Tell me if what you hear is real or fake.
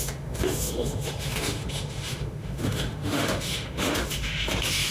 fake